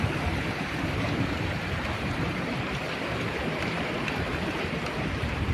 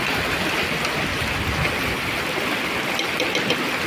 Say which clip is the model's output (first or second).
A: first